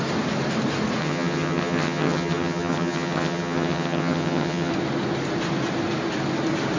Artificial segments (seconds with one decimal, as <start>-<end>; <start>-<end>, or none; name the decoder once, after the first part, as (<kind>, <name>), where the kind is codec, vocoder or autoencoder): 1.0-4.7 (vocoder, HiFi-GAN)